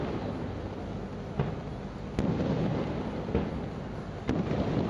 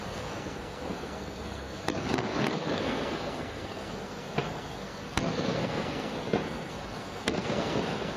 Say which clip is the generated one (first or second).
second